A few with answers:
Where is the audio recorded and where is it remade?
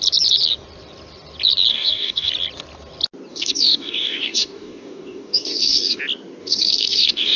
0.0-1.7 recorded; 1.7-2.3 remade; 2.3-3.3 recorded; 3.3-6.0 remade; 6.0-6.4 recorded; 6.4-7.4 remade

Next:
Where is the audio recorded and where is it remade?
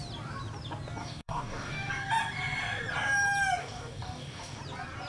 0.0-1.0 recorded; 1.0-1.9 remade; 1.9-3.6 recorded; 3.6-4.6 remade; 4.6-5.1 recorded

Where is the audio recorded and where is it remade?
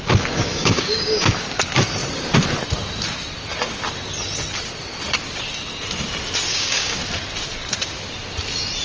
0.0-0.5 recorded; 0.5-1.3 remade; 1.3-6.5 recorded; 6.5-7.0 remade; 7.0-8.8 recorded